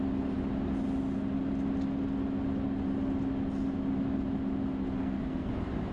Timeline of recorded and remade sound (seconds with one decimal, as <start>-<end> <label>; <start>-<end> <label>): 0.0-5.0 recorded; 5.0-5.5 remade; 5.5-5.9 recorded